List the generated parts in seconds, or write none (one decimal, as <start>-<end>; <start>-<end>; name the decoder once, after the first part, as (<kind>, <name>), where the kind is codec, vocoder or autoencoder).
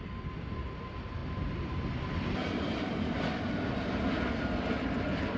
none